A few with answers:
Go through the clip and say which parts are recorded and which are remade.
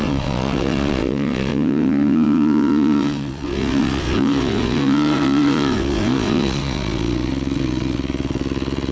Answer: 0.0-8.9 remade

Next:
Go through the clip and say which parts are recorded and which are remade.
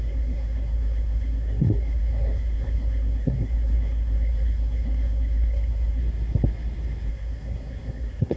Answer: 0.0-6.0 remade; 6.0-7.1 recorded; 7.1-8.4 remade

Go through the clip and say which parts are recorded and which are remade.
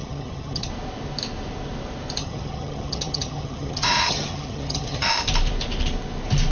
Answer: 0.0-0.7 remade; 0.7-2.2 recorded; 2.2-5.1 remade; 5.1-6.5 recorded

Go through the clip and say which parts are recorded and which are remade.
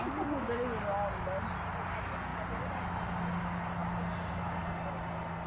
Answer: 0.0-5.5 recorded